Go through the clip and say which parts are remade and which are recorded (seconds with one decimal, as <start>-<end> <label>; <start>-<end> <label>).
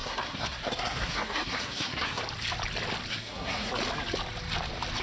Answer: 0.0-2.2 remade; 2.2-3.1 recorded; 3.1-3.7 remade; 3.7-5.0 recorded